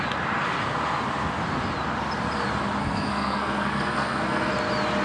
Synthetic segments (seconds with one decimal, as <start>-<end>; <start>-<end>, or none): 2.8-4.5